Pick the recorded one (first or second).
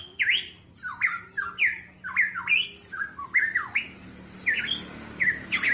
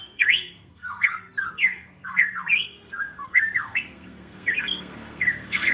first